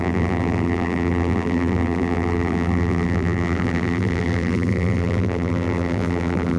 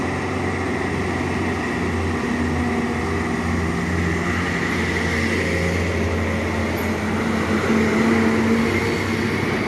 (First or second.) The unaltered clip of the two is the second